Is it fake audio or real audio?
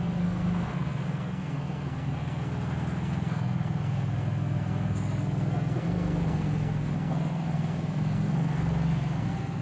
fake